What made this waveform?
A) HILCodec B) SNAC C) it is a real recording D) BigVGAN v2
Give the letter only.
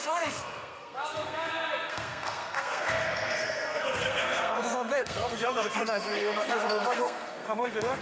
B